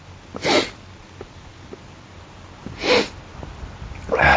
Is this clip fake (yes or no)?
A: no